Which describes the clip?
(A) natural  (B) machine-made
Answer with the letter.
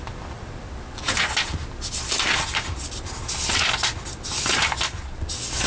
A